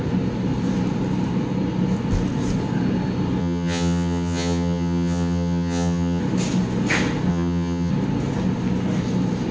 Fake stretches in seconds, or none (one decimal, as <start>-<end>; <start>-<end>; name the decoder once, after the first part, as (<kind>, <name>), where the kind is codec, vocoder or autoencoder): 3.4-6.2 (vocoder, HiFi-GAN); 7.3-7.9